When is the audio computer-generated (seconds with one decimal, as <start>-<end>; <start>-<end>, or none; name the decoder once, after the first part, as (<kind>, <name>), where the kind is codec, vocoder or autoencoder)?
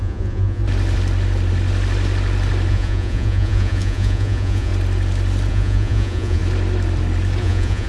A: 0.0-0.6 (vocoder, Vocos); 2.7-4.7; 5.5-6.4; 7.4-7.9